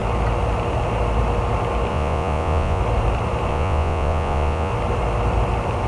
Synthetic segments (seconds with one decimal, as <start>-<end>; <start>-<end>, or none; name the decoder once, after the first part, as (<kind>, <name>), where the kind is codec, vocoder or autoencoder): 1.9-2.8 (vocoder, Vocos); 3.5-4.7